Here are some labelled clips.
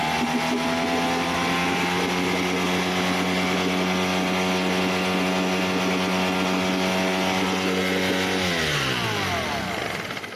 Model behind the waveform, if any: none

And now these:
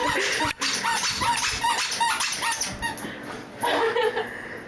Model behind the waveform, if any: none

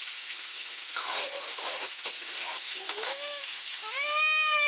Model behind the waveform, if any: autoencoder, DAC-VAE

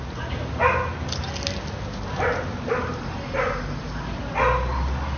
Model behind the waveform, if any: none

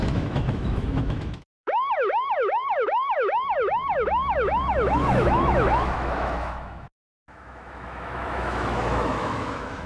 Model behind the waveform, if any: autoencoder, DAC-VAE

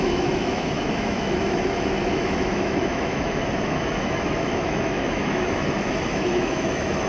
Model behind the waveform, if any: autoencoder, DAC-VAE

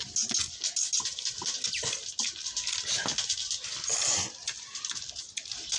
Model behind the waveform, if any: none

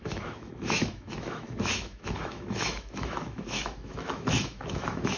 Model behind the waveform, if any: autoencoder, DAC-VAE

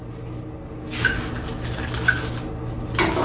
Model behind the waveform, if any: none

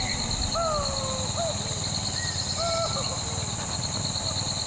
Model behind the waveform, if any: none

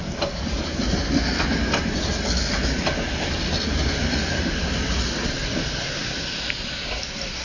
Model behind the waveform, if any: none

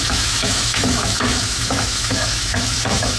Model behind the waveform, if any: autoencoder, DAC-VAE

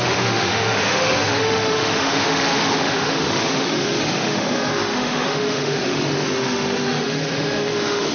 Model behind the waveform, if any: autoencoder, DAC-VAE